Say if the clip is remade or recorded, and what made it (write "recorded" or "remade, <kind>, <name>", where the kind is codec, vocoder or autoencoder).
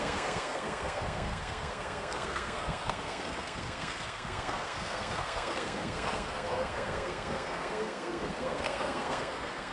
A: remade, codec, SNAC